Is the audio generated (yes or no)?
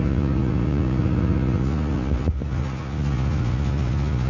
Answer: yes